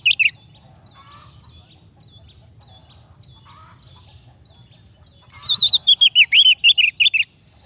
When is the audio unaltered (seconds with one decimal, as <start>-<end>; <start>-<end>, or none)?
0.0-7.7